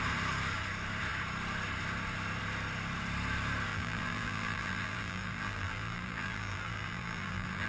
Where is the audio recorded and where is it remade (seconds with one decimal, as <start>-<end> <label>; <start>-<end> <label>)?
0.0-3.7 recorded; 3.7-7.7 remade